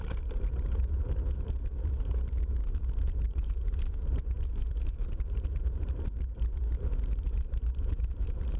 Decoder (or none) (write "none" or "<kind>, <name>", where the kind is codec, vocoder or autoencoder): vocoder, BigVGAN v2